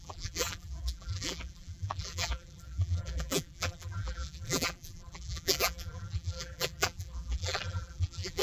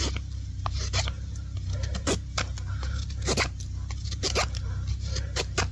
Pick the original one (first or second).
second